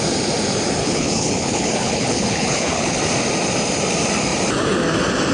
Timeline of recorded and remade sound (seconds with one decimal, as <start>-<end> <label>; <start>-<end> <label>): 0.0-0.8 recorded; 0.8-3.0 remade; 3.0-5.3 recorded